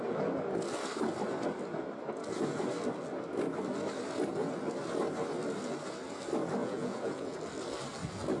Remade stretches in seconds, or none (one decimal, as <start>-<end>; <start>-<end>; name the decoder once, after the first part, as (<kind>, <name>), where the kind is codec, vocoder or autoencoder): 6.6-7.4 (vocoder, Vocos)